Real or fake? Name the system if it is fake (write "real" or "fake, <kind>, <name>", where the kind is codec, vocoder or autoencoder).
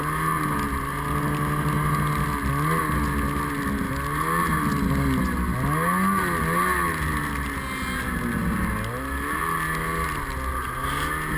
real